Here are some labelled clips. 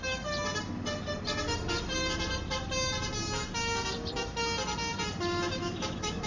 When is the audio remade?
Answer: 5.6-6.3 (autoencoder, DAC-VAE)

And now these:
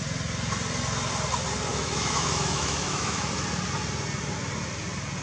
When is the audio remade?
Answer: 1.7-3.3 (autoencoder, DAC-VAE)